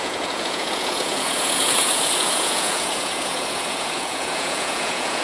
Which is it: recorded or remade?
remade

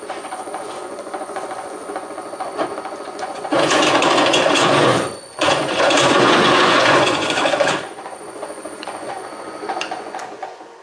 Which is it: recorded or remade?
remade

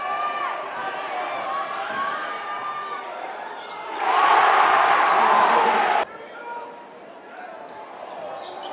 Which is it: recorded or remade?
recorded